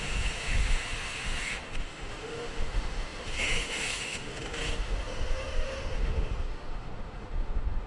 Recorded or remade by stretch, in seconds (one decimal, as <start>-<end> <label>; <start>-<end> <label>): 0.0-7.9 remade